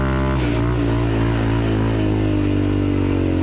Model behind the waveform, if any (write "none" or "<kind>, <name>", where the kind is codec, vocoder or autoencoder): none